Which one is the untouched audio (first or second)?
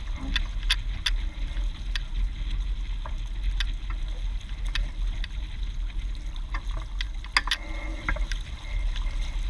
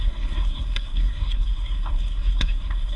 first